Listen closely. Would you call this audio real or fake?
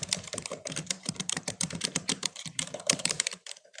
fake